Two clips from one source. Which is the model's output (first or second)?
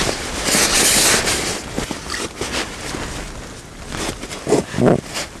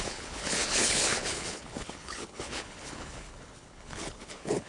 second